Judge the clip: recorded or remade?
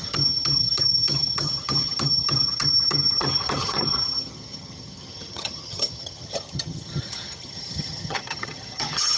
remade